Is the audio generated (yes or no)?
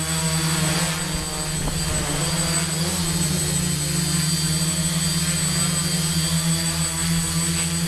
no